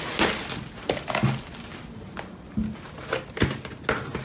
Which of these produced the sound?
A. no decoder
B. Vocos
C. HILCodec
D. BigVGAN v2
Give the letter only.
A